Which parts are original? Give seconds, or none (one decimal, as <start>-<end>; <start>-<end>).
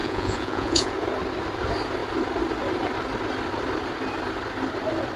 0.9-5.2